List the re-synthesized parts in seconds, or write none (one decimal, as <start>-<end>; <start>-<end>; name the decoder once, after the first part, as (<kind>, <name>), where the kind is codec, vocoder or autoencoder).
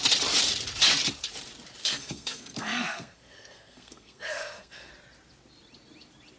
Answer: 1.8-4.9 (codec, SNAC)